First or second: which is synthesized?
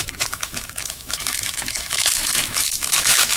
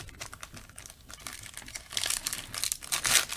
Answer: first